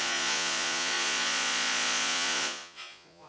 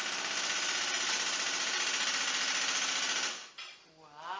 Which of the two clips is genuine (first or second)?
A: second